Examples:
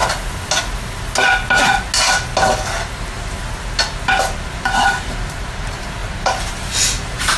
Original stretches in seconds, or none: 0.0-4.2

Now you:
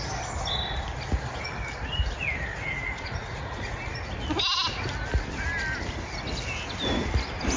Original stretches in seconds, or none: 0.0-2.5; 3.8-7.6